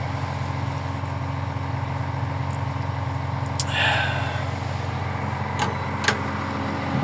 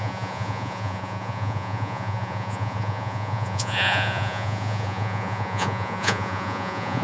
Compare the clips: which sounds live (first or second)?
first